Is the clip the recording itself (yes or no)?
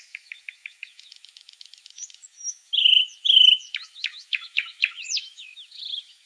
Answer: no